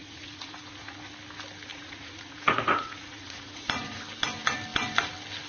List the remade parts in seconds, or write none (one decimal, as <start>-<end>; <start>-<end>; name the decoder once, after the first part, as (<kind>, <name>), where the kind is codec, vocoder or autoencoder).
0.0-1.1 (vocoder, Vocos); 1.7-4.0